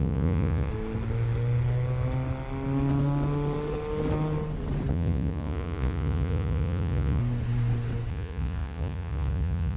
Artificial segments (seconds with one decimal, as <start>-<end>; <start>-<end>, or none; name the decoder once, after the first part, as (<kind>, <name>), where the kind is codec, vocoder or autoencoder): 0.0-0.7 (vocoder, Vocos); 4.9-7.2; 8.1-9.8